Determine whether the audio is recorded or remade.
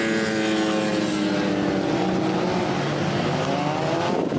recorded